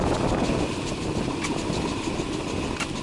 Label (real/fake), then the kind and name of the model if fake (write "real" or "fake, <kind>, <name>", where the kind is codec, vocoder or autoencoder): fake, vocoder, BigVGAN v2